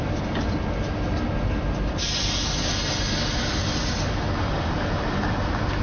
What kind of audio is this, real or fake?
real